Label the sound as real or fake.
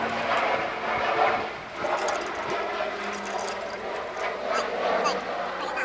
real